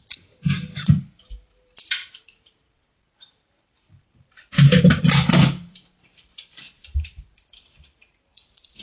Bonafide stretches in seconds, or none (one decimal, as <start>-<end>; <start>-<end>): none